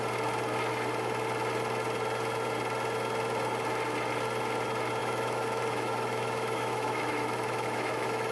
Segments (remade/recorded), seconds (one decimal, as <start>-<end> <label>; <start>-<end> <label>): 0.0-5.0 recorded; 5.0-8.3 remade